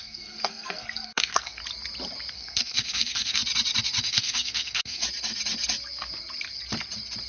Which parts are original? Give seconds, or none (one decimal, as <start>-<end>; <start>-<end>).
1.6-2.3; 3.4-4.0; 5.0-7.3